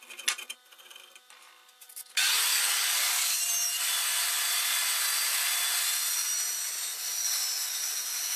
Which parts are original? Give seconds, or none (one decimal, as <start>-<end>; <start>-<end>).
0.0-2.5; 3.4-8.4